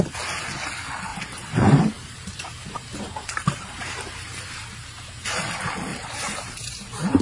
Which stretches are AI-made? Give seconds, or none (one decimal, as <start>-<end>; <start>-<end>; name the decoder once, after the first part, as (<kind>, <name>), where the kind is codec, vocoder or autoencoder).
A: 1.1-5.4 (vocoder, BigVGAN v2); 5.9-7.2